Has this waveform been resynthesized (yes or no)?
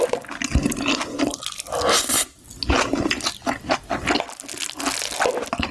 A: no